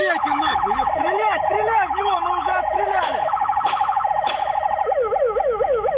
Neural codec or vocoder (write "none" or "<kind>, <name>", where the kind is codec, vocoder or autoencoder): autoencoder, DAC-VAE